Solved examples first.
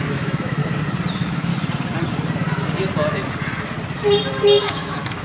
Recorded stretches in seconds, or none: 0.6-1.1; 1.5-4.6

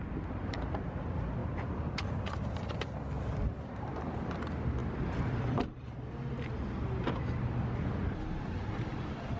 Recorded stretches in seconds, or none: 0.0-4.8; 6.1-9.4